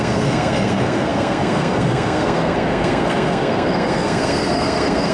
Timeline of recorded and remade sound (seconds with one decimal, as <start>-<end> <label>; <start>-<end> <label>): 0.0-5.1 remade